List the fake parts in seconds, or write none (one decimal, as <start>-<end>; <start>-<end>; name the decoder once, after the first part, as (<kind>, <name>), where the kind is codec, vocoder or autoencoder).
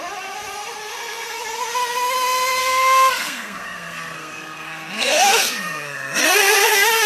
0.9-1.4 (codec, SNAC); 2.6-7.1